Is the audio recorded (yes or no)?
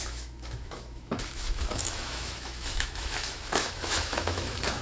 no